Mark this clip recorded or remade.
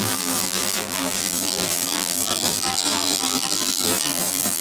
remade